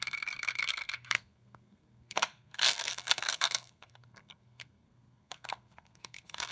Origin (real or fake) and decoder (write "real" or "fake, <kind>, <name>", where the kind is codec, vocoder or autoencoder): fake, codec, SNAC